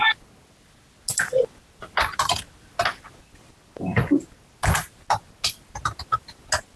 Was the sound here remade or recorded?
recorded